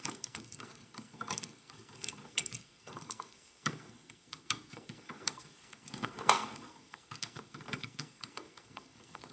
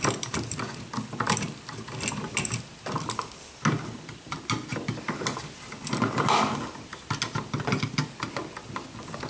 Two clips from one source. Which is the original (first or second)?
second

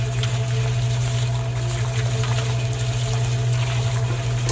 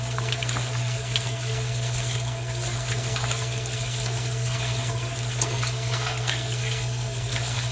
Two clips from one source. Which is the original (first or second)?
first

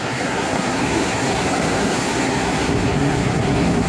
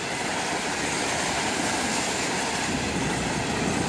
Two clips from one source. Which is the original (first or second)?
second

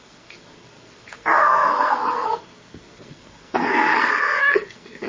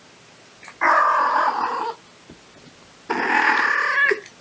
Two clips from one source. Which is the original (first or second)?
second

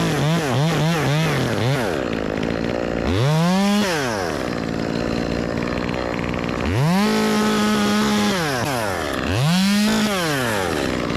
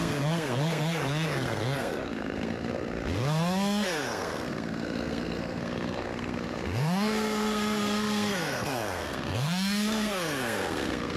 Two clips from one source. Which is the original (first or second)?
first